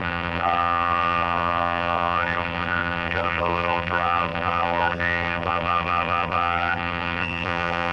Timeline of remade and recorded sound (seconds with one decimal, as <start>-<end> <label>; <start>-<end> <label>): 0.0-7.9 remade